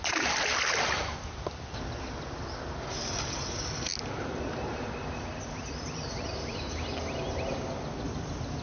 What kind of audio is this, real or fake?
real